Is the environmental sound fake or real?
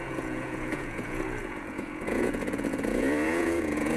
fake